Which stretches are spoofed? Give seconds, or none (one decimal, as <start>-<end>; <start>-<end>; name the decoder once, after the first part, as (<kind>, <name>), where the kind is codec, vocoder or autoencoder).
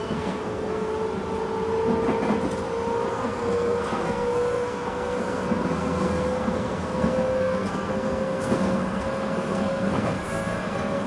0.0-0.9 (codec, SNAC); 3.1-11.1